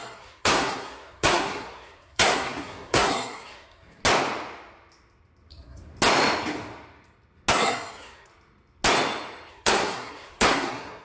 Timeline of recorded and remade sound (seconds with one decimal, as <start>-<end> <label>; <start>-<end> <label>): 0.0-4.0 remade; 4.0-5.5 recorded; 5.5-5.9 remade; 5.9-7.5 recorded; 7.5-8.3 remade; 8.3-9.5 recorded; 9.5-11.0 remade